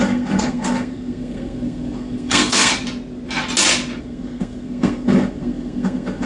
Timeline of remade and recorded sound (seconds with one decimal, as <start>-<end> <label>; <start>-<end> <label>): 0.0-2.7 remade; 2.7-4.0 recorded; 4.0-6.3 remade